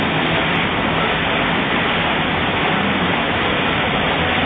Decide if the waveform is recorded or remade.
recorded